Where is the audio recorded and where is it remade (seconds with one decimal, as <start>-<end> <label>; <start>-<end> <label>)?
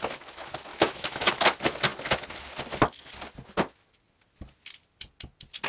0.0-0.7 recorded; 0.7-1.3 remade; 1.3-5.7 recorded